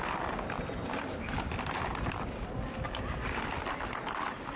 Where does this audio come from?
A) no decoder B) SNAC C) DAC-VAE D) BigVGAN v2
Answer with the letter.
A